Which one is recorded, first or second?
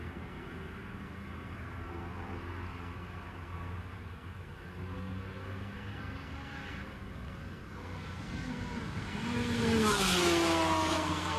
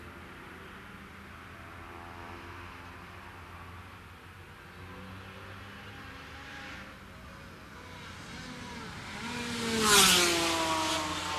second